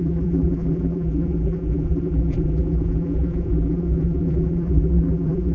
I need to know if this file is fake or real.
fake